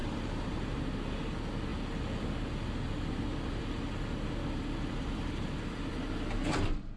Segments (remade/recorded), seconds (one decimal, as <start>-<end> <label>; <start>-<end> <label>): 0.0-0.8 remade; 0.8-7.0 recorded